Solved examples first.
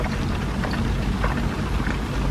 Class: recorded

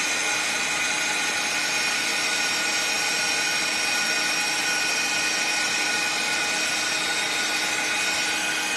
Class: recorded